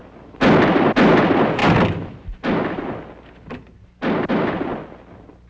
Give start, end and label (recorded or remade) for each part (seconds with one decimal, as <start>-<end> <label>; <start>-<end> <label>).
0.0-5.5 recorded